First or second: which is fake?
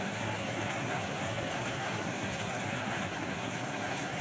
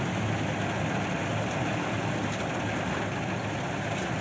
first